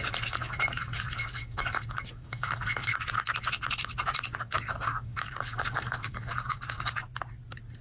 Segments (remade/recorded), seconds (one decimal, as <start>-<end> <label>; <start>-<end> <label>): 0.0-2.9 remade; 2.9-4.4 recorded; 4.4-7.0 remade; 7.0-7.8 recorded